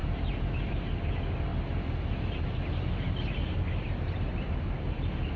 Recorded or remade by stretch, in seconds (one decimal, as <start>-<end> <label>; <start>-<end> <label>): 0.0-5.4 recorded